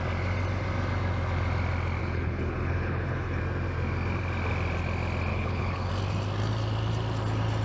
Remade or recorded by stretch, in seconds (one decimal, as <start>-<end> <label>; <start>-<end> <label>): 0.0-2.0 recorded; 2.0-3.4 remade; 3.4-5.3 recorded; 5.3-5.9 remade; 5.9-7.6 recorded